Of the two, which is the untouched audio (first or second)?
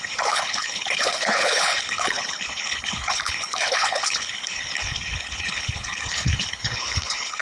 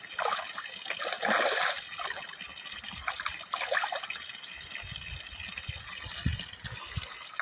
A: second